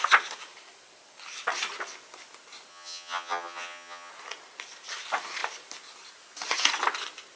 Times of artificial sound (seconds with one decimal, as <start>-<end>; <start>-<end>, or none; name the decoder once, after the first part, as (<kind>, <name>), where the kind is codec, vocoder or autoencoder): 2.7-4.1 (vocoder, HiFi-GAN)